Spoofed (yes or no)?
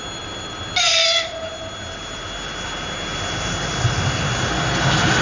no